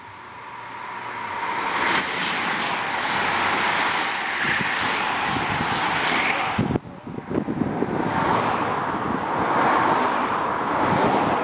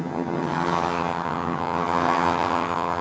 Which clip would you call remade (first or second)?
second